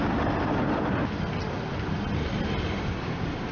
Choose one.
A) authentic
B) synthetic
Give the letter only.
A